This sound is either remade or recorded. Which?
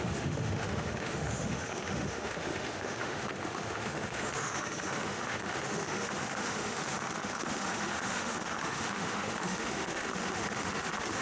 remade